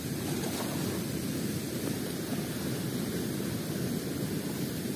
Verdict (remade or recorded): recorded